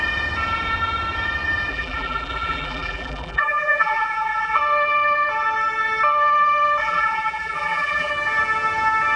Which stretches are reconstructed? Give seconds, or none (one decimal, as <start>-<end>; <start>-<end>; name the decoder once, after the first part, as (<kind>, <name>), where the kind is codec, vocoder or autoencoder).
1.7-4.6 (vocoder, BigVGAN v2); 6.8-8.1